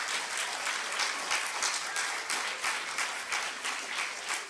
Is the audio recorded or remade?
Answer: recorded